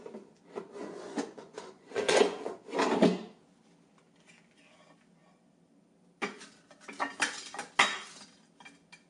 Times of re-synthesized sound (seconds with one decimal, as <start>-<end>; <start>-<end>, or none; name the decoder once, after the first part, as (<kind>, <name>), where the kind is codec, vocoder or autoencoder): 0.8-2.6 (vocoder, Vocos)